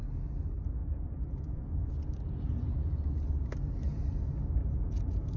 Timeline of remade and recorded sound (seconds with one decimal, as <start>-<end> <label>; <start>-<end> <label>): 0.0-0.8 recorded; 0.8-2.9 remade; 2.9-4.6 recorded; 4.6-5.4 remade